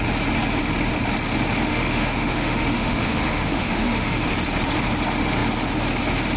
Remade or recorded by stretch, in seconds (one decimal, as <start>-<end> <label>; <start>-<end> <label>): 0.0-1.7 recorded; 1.7-4.3 remade; 4.3-6.4 recorded

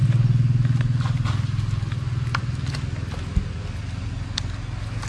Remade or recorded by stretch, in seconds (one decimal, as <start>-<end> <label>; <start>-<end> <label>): 0.0-5.1 recorded

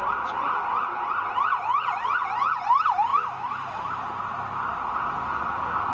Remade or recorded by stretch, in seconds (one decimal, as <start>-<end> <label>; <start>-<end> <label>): 0.0-3.1 recorded; 3.1-4.0 remade; 4.0-5.9 recorded

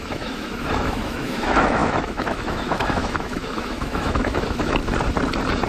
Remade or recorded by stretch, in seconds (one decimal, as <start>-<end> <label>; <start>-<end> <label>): 0.0-4.8 remade; 4.8-5.7 recorded